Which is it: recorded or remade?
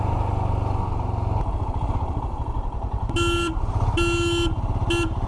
recorded